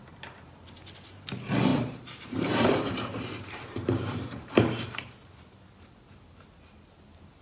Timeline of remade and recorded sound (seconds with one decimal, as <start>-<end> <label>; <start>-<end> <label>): 0.0-1.7 recorded; 1.7-5.1 remade; 5.1-7.4 recorded